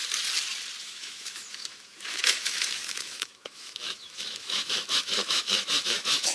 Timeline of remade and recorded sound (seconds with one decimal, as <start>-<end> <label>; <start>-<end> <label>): 0.0-0.8 recorded; 0.8-6.3 remade